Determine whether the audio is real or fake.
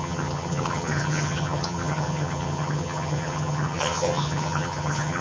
fake